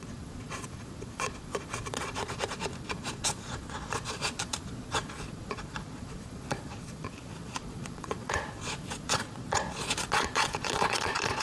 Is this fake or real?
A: fake